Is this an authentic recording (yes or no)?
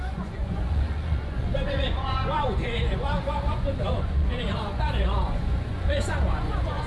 no